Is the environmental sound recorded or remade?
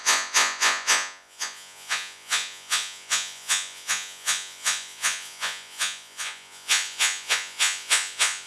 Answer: remade